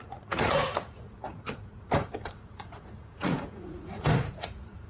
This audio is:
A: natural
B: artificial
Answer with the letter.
B